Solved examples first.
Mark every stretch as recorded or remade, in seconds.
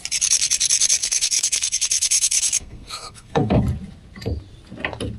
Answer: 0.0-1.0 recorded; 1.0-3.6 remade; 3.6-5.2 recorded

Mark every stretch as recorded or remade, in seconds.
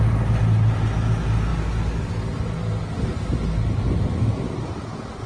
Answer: 0.0-5.3 recorded